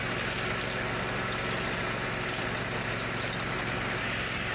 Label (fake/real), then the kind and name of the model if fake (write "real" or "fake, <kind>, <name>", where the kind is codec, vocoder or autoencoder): real